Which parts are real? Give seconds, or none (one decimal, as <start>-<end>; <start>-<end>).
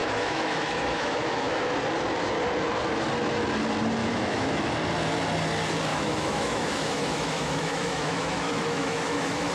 1.7-4.0; 4.7-5.9